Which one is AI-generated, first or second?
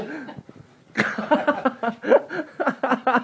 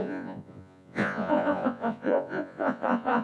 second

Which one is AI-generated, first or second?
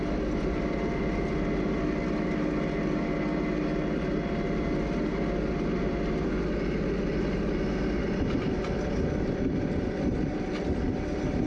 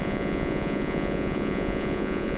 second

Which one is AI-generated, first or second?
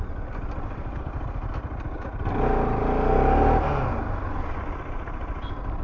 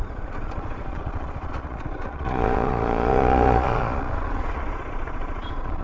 second